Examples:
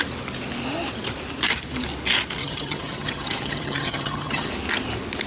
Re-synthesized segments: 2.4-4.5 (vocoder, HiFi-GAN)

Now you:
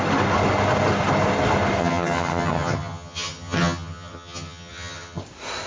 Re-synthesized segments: 1.8-5.2 (vocoder, HiFi-GAN)

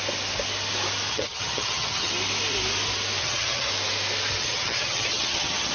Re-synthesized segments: 1.1-2.1 (vocoder, HiFi-GAN); 3.2-3.7; 4.4-5.7

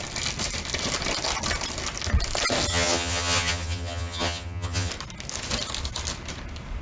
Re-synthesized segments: 2.7-4.9 (vocoder, HiFi-GAN)

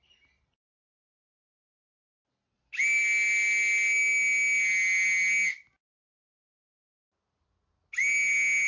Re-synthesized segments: none